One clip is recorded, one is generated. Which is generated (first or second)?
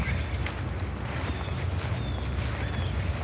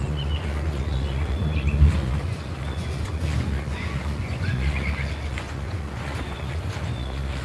second